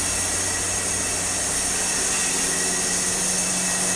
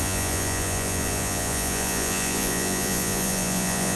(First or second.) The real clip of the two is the first